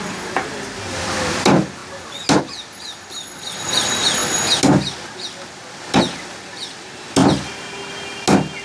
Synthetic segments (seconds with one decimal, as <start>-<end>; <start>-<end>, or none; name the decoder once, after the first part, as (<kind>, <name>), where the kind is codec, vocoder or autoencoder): 7.2-7.9 (vocoder, BigVGAN v2)